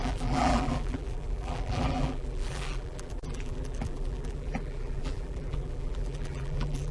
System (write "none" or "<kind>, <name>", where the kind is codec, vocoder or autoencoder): vocoder, BigVGAN v2